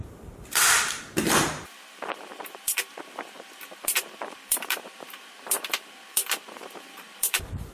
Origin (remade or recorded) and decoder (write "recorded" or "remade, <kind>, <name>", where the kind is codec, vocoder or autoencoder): remade, vocoder, BigVGAN v2